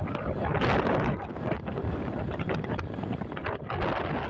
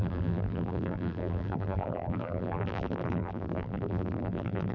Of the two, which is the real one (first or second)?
first